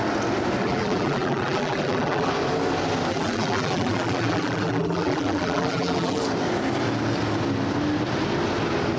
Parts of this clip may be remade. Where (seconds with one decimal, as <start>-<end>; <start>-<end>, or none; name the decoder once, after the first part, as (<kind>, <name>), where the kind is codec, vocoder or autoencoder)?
0.6-2.3 (vocoder, BigVGAN v2); 3.1-6.2